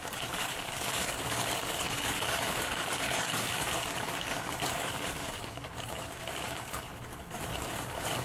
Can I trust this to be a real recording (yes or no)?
no